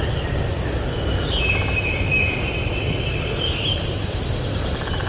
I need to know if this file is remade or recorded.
recorded